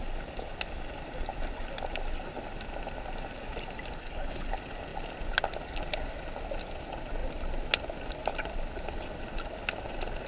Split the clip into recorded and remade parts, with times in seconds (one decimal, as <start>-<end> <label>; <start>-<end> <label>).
0.0-4.0 recorded; 4.0-4.5 remade; 4.5-10.3 recorded